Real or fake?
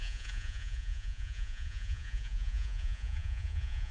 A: fake